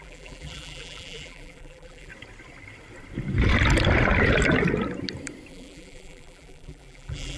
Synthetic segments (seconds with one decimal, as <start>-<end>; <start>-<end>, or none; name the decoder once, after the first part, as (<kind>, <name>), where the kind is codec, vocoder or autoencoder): 0.0-2.1 (vocoder, BigVGAN v2); 5.5-7.4